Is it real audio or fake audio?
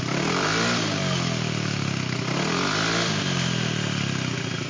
real